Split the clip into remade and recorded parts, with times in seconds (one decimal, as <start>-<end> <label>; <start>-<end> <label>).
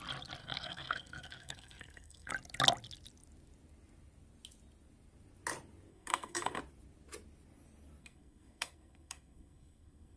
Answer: 0.0-0.4 recorded; 0.4-2.3 remade; 2.3-5.9 recorded; 5.9-6.6 remade; 6.6-8.0 recorded; 8.0-10.2 remade